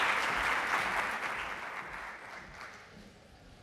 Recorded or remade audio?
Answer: recorded